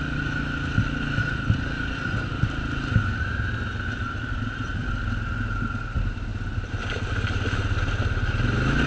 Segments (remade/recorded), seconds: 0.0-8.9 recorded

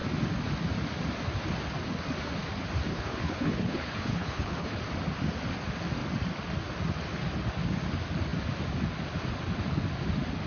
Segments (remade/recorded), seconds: 0.0-2.9 recorded; 2.9-4.8 remade; 4.8-10.5 recorded

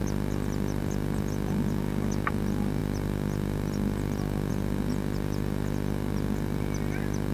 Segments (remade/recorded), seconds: 0.0-7.3 recorded

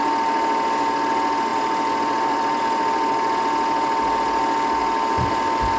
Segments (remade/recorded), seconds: 0.0-1.5 recorded; 1.5-2.6 remade; 2.6-5.8 recorded

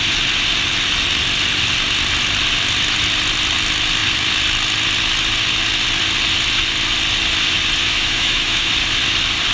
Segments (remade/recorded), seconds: 0.0-7.8 recorded; 7.8-8.7 remade; 8.7-9.5 recorded

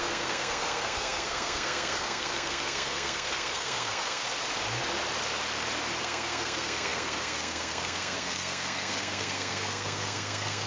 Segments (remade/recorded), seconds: 0.0-4.2 remade; 4.2-6.0 recorded; 6.0-10.7 remade